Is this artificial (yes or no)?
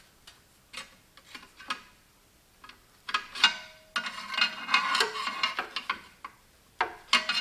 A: no